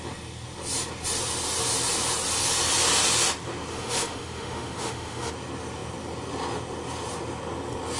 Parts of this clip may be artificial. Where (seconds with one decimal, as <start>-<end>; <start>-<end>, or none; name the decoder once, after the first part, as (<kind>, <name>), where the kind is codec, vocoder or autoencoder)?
3.7-5.3 (autoencoder, DAC-VAE)